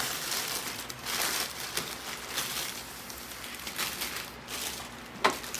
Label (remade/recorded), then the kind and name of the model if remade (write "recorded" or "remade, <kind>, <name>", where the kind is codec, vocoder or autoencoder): recorded